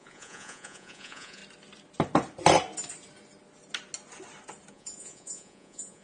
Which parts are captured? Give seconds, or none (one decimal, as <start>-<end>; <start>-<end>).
1.4-4.7